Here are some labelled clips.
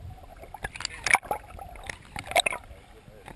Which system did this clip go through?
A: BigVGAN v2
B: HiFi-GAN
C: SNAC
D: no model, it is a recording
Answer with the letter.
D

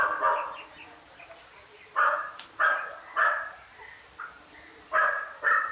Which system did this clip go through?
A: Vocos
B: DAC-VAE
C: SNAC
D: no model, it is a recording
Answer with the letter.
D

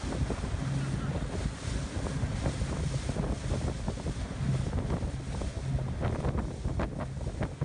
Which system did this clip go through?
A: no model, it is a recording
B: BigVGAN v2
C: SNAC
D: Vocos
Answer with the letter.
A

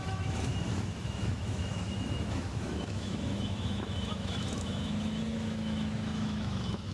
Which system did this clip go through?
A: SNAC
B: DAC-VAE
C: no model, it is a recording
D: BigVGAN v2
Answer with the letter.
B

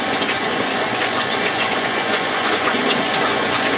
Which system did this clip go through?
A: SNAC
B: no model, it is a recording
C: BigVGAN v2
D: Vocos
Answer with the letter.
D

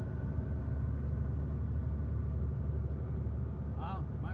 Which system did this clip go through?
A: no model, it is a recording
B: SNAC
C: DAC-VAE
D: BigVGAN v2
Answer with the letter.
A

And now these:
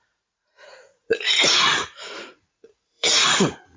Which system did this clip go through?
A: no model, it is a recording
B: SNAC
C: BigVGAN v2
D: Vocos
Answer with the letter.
D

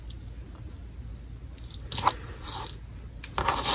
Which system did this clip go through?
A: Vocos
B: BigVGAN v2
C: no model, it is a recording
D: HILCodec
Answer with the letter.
C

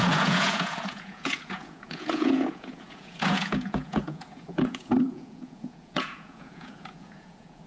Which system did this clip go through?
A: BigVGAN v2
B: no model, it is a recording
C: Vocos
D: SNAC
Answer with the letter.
C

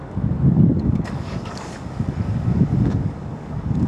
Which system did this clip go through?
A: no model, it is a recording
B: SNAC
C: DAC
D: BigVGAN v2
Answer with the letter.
C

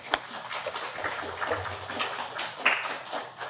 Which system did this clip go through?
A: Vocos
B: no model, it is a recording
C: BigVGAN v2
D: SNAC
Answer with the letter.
B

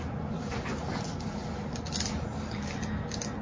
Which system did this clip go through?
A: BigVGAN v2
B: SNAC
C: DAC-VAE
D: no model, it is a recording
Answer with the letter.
D